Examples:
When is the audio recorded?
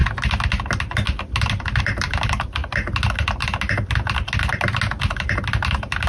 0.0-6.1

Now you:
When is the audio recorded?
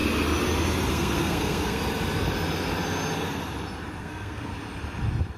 0.0-0.9; 1.8-4.0; 4.5-5.4